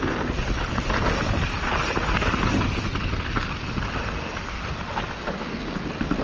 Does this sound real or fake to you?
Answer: real